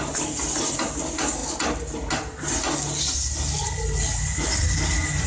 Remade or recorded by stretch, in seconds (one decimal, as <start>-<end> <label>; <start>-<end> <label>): 0.0-5.3 recorded